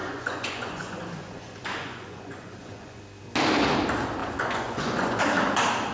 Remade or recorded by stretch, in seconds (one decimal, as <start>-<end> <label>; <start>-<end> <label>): 0.0-3.0 remade; 3.0-4.2 recorded; 4.2-5.2 remade; 5.2-5.9 recorded